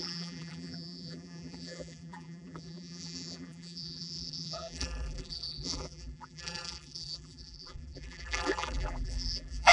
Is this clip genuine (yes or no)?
no